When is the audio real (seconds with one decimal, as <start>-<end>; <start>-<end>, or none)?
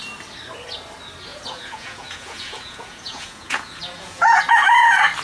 0.0-1.3; 4.4-5.2